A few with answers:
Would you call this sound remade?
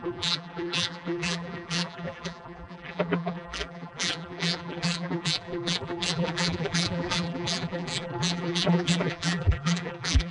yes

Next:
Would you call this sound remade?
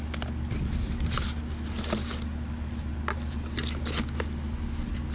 no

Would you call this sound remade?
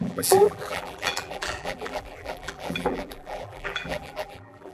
yes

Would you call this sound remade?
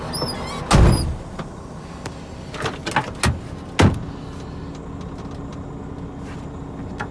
no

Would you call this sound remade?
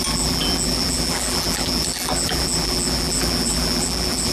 yes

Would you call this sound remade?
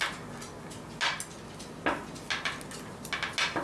no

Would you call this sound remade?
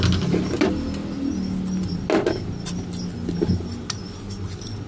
no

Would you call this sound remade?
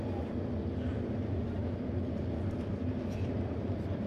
yes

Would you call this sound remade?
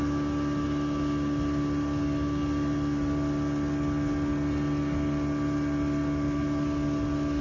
no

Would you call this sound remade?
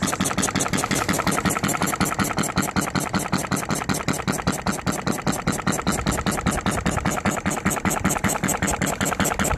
no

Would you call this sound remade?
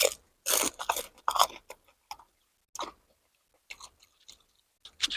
no